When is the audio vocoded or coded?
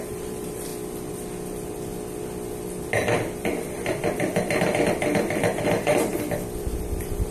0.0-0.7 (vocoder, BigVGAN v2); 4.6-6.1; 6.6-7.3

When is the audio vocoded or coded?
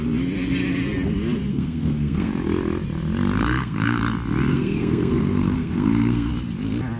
1.5-2.3 (codec, SNAC); 3.4-4.0; 4.5-6.3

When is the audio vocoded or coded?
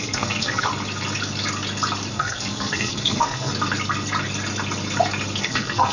0.0-0.7 (codec, SNAC); 2.1-3.5; 5.4-5.9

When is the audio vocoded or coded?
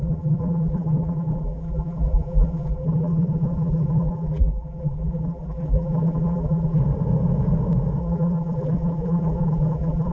0.0-6.8 (vocoder, BigVGAN v2); 8.0-10.1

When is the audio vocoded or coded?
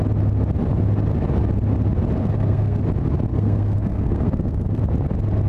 2.2-2.8 (codec, SNAC); 3.3-4.8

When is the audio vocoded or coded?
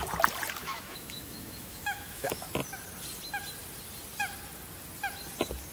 0.6-2.4 (autoencoder, DAC-VAE)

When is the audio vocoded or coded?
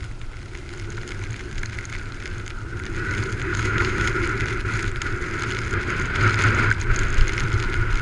3.5-4.1 (autoencoder, DAC-VAE)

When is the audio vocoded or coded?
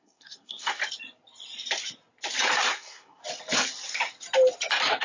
0.0-0.8 (codec, SNAC); 2.7-3.2